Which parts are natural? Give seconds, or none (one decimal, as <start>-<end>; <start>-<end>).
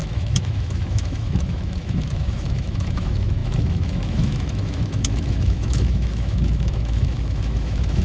none